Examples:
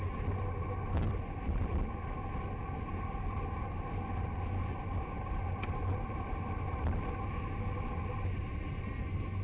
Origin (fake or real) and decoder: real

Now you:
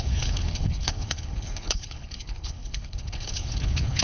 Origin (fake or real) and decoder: fake, codec, HILCodec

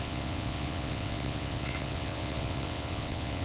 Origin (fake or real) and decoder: fake, vocoder, WaveNeXt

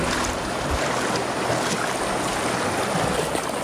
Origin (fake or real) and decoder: real